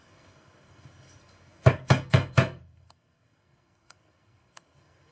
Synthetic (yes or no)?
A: yes